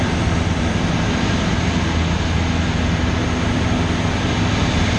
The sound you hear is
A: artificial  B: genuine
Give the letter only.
B